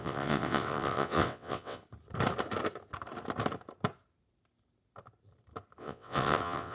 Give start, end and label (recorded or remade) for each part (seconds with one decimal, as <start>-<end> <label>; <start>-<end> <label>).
0.0-1.8 remade; 1.8-5.8 recorded; 5.8-6.7 remade